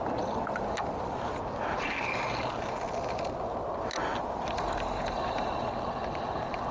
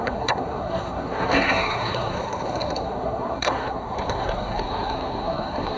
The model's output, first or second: second